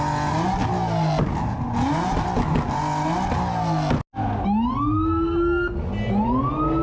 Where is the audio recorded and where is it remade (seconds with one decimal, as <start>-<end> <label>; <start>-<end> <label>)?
0.0-6.8 recorded